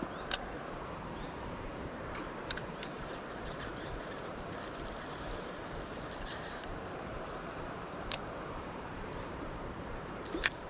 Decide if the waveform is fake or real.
fake